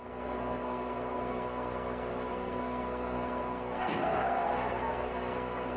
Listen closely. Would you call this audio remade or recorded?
remade